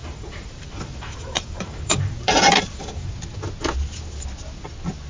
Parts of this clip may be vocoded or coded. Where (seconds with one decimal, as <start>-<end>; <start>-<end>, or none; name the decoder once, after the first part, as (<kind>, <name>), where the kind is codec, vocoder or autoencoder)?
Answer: 0.0-3.1 (vocoder, BigVGAN v2)